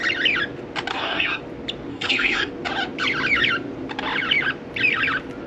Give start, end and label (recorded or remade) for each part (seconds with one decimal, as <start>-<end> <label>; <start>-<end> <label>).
0.0-0.9 recorded; 0.9-1.4 remade; 1.4-1.9 recorded; 1.9-2.5 remade; 2.5-5.5 recorded